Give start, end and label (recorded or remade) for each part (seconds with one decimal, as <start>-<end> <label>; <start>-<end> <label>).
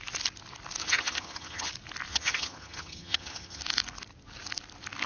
0.0-0.8 recorded; 0.8-1.7 remade; 1.7-2.1 recorded; 2.1-3.6 remade; 3.6-5.1 recorded